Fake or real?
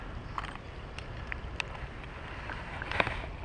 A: real